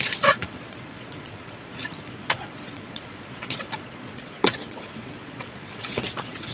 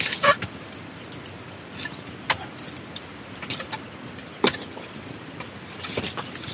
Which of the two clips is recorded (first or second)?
second